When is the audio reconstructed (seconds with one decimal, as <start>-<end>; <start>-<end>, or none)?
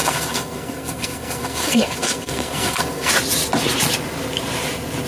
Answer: 0.0-3.1